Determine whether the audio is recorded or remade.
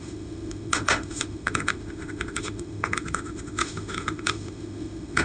remade